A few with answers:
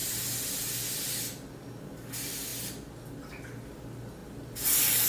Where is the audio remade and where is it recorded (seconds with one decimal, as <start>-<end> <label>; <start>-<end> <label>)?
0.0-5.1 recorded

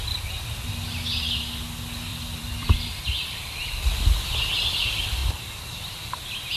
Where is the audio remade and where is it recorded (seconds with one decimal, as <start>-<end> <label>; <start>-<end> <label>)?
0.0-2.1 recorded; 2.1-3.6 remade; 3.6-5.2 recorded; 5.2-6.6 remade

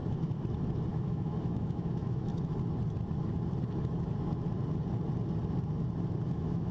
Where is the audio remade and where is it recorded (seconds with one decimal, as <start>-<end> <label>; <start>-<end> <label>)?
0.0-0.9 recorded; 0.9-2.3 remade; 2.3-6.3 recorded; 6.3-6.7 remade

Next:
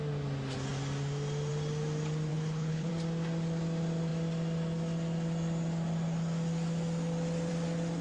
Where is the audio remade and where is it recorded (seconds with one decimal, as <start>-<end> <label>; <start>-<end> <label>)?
0.0-2.3 recorded; 2.3-2.9 remade; 2.9-8.0 recorded

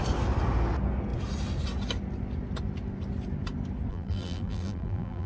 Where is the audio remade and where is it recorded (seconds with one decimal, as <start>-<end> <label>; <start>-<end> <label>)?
0.0-3.9 recorded; 3.9-5.3 remade

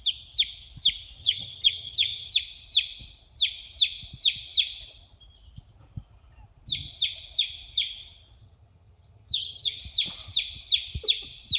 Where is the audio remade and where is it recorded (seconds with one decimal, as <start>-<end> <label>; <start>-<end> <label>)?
0.0-1.2 recorded; 1.2-2.3 remade; 2.3-8.4 recorded; 8.4-9.8 remade; 9.8-11.6 recorded